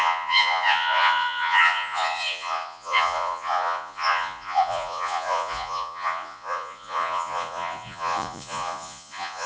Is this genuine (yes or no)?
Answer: no